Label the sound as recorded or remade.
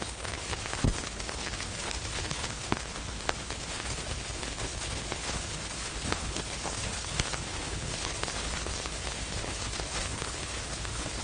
remade